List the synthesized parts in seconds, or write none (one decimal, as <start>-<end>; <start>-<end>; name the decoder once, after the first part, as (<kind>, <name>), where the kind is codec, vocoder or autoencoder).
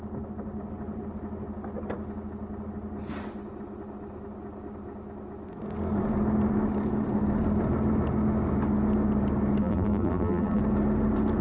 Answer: 9.6-10.6 (vocoder, BigVGAN v2)